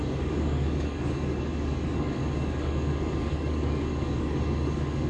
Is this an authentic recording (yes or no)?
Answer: no